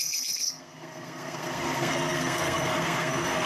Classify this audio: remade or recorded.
remade